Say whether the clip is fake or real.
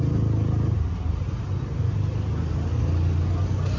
real